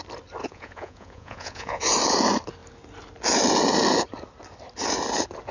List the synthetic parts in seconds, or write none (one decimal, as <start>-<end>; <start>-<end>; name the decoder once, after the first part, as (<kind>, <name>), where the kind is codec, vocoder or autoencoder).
0.4-1.8 (vocoder, Vocos)